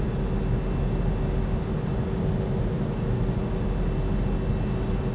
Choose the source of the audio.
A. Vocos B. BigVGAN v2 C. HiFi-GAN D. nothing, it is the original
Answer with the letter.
D